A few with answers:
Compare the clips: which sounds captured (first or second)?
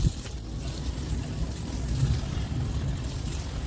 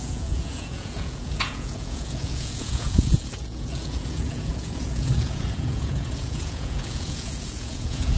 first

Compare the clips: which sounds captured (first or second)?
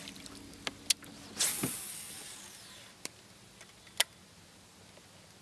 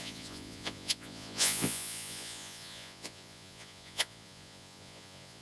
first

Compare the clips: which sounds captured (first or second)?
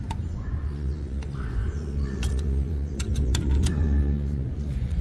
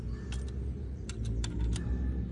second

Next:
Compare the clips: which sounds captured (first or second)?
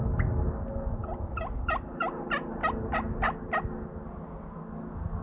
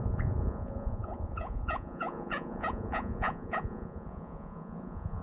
first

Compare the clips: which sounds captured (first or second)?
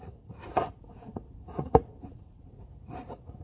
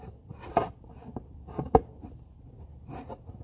second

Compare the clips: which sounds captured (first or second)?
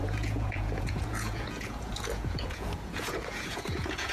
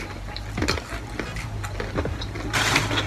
second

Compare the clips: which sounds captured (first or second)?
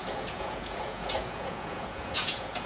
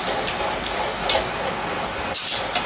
second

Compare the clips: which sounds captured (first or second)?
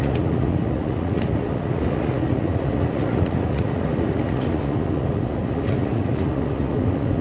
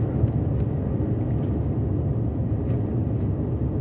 second